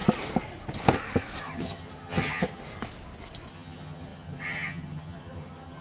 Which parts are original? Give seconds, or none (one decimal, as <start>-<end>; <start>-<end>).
0.0-1.4; 2.6-3.5